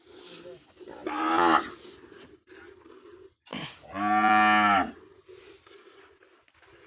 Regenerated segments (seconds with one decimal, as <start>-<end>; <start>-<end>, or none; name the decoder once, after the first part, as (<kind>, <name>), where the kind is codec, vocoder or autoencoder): none